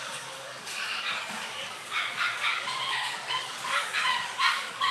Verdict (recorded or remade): remade